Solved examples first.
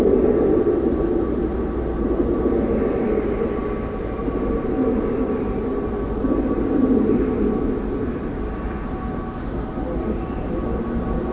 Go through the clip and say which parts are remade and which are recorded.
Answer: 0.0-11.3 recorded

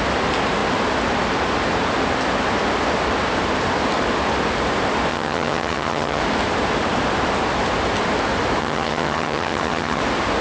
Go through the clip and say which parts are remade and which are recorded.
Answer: 0.0-5.1 recorded; 5.1-6.2 remade; 6.2-8.6 recorded; 8.6-10.0 remade; 10.0-10.4 recorded

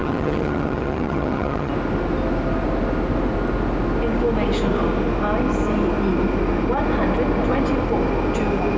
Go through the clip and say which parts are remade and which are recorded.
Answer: 0.0-1.7 remade; 1.7-8.8 recorded

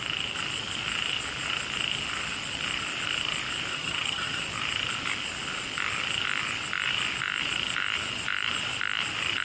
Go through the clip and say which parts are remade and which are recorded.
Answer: 0.0-3.7 recorded; 3.7-4.4 remade; 4.4-9.4 recorded